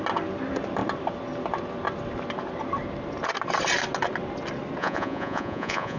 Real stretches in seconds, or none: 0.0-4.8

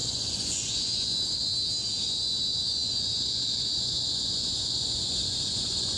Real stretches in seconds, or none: 1.5-2.0

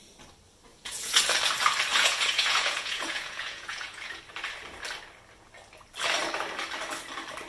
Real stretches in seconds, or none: 0.0-0.7; 1.2-1.9; 4.2-7.5